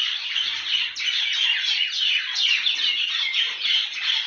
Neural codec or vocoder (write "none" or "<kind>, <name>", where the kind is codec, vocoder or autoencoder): vocoder, BigVGAN v2